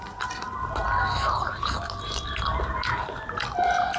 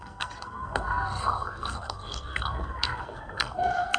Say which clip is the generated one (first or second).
second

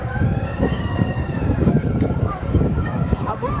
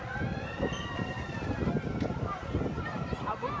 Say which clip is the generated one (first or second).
first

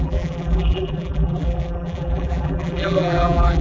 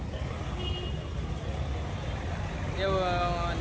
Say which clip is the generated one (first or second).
first